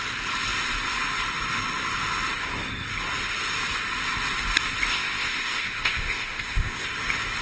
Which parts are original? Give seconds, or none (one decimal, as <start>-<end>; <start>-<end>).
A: 0.0-4.9; 6.9-7.4